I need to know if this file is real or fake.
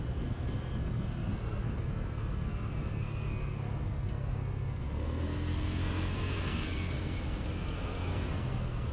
fake